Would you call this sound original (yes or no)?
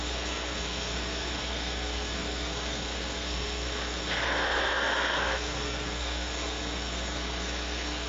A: no